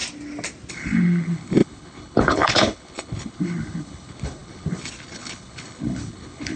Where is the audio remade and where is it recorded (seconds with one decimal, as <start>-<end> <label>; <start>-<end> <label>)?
0.0-0.7 recorded; 0.7-6.6 remade